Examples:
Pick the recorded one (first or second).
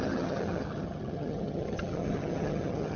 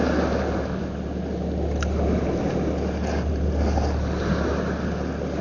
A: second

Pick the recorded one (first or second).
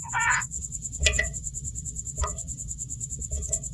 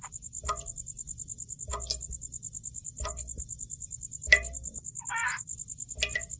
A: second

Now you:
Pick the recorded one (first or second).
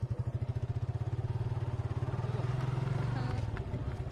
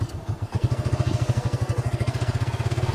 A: first